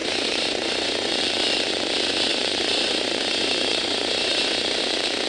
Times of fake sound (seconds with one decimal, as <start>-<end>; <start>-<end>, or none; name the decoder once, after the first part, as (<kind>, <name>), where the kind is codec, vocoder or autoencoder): 0.0-1.2 (vocoder, Vocos); 2.3-4.8